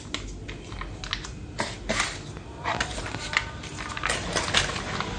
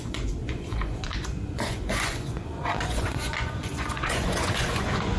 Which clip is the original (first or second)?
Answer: first